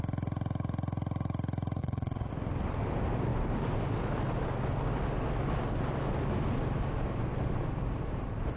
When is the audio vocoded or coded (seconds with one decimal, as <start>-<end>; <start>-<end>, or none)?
1.8-2.3